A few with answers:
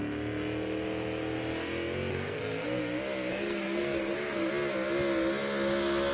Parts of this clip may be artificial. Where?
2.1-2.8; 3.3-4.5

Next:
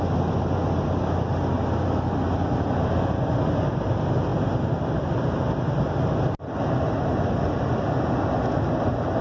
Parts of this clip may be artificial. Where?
none

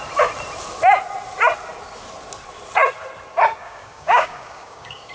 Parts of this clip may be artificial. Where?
3.6-5.1

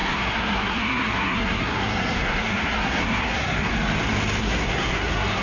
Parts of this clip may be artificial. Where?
0.0-3.7; 4.4-5.4

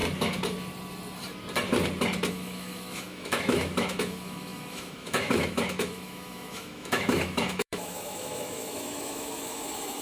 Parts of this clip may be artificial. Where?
2.3-10.0

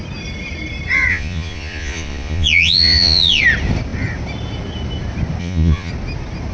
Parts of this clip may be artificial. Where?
1.1-3.4; 5.4-5.9

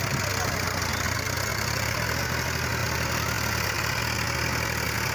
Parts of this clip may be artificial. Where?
1.5-2.2; 2.8-3.8